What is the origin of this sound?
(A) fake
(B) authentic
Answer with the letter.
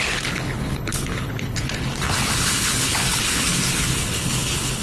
A